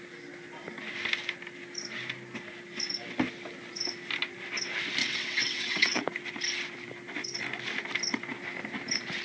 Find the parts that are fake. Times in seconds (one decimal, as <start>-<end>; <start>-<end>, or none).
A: 5.0-6.0